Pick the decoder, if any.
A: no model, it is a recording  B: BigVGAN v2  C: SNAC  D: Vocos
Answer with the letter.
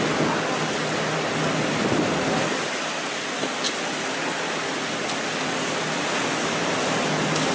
A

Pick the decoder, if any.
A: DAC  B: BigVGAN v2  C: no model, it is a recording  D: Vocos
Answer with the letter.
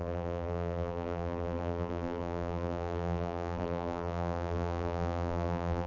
B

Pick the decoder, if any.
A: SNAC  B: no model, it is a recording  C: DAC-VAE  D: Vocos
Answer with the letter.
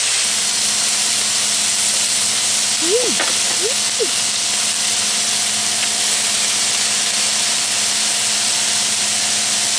B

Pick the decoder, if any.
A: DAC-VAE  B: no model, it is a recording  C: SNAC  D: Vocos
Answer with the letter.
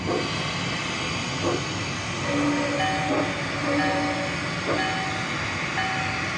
B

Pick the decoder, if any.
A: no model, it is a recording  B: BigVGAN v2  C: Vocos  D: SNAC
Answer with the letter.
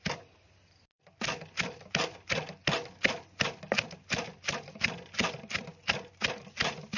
A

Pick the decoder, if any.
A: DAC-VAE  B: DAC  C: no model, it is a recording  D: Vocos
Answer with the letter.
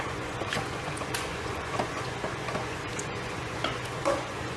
D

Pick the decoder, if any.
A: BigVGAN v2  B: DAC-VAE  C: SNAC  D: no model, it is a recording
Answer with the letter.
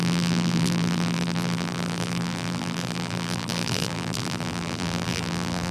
A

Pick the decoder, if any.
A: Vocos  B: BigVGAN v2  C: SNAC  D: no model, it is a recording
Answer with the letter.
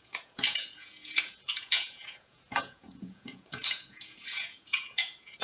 A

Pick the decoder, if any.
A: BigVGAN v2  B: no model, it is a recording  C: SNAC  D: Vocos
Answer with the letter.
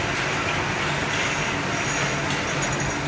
B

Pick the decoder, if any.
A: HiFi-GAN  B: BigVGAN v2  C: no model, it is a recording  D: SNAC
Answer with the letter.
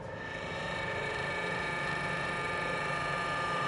B